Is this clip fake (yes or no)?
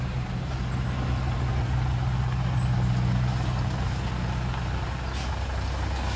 no